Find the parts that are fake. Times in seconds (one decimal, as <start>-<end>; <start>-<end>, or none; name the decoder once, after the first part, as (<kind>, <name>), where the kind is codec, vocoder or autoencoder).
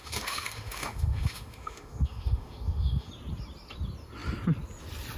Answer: 0.0-3.1 (autoencoder, DAC-VAE)